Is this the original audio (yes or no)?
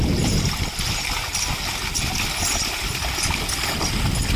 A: yes